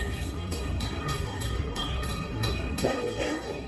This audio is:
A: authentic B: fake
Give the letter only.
B